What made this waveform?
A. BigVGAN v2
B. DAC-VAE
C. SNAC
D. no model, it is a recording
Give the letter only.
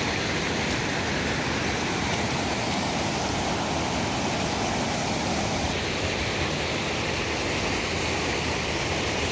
D